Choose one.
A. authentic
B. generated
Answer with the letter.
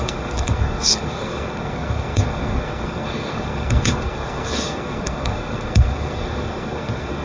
B